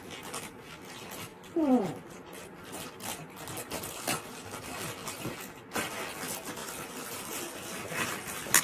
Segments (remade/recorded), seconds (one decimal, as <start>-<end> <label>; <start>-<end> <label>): 0.0-1.3 recorded; 1.3-2.9 remade; 2.9-6.6 recorded; 6.6-7.2 remade; 7.2-8.6 recorded